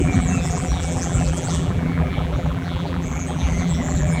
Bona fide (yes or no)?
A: no